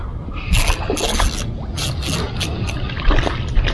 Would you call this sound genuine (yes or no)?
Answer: yes